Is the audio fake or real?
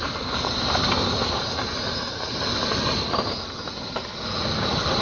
real